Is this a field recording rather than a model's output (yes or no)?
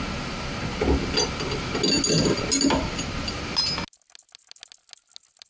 yes